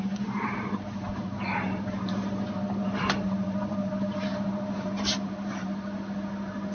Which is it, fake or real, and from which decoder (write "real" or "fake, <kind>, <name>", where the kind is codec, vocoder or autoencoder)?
fake, vocoder, BigVGAN v2